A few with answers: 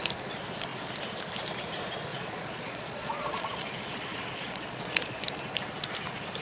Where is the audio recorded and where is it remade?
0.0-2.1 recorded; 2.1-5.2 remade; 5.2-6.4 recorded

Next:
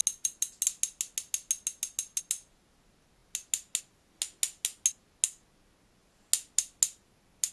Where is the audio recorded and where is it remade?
0.0-7.5 recorded

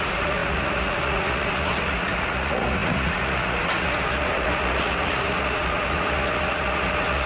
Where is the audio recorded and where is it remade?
0.0-7.3 remade